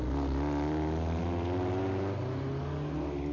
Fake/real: real